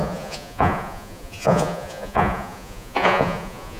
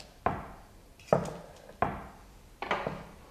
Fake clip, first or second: first